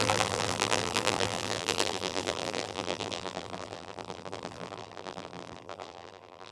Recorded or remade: remade